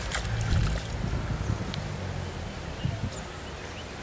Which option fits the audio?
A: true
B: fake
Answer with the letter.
A